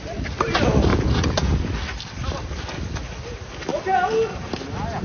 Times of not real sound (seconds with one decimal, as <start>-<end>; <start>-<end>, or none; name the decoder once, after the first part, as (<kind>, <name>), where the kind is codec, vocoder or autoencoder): 0.9-1.7 (vocoder, Vocos)